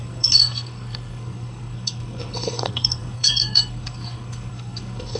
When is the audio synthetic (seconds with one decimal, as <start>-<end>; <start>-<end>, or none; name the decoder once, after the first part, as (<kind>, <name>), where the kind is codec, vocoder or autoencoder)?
0.0-5.2 (codec, SNAC)